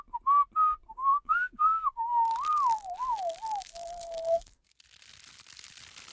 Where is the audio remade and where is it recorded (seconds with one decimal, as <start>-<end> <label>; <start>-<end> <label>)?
0.0-1.1 recorded; 1.1-4.8 remade; 4.8-6.1 recorded